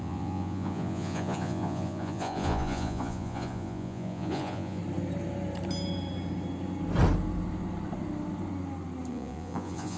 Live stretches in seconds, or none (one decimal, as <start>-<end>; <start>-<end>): 4.8-9.1